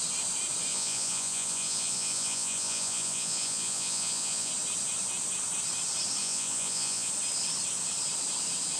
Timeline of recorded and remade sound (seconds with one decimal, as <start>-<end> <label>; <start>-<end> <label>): 0.0-0.7 recorded; 0.7-4.5 remade; 4.5-6.2 recorded; 6.2-7.1 remade; 7.1-8.8 recorded